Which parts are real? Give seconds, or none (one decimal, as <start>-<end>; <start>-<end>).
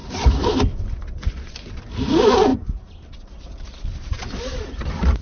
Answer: 0.0-1.5